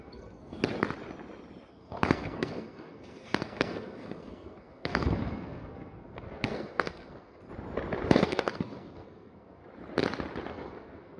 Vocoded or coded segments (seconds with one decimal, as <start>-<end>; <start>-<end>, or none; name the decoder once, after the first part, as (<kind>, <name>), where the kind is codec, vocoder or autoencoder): 0.0-0.6 (codec, SNAC); 1.7-7.5; 8.1-9.6; 10.5-11.2